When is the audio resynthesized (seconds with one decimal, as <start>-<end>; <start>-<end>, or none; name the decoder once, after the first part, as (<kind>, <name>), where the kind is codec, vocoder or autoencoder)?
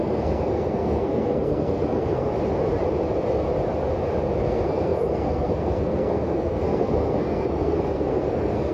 0.0-2.3 (codec, SNAC); 4.4-8.7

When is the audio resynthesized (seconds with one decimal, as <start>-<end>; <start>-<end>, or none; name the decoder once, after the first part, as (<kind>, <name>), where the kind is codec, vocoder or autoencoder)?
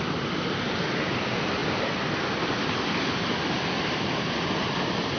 none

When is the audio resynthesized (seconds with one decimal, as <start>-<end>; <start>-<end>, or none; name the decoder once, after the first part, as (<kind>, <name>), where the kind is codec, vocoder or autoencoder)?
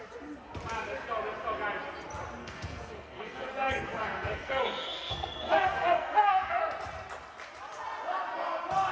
2.4-6.6 (codec, SNAC)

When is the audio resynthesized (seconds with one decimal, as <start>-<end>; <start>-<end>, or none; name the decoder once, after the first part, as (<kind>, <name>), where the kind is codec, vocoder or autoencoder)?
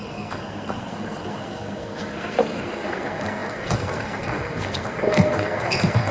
0.0-6.1 (codec, SNAC)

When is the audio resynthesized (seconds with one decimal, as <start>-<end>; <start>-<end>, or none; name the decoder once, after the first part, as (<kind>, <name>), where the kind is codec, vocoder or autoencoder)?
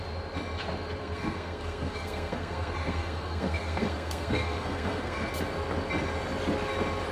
1.0-5.3 (codec, SNAC)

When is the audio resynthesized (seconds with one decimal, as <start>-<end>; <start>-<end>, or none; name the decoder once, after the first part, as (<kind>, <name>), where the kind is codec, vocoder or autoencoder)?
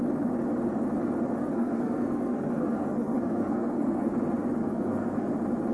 1.4-4.1 (codec, SNAC); 4.6-5.3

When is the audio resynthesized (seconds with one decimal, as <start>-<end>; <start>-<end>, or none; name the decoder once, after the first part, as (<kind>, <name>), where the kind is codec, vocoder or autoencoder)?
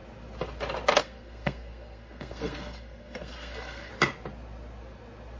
1.0-3.9 (codec, SNAC)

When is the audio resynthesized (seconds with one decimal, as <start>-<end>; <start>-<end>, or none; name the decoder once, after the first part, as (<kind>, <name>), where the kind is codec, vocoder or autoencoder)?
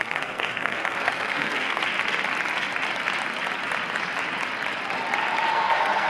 0.0-1.8 (codec, SNAC); 5.5-6.1